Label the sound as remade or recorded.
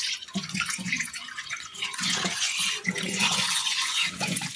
remade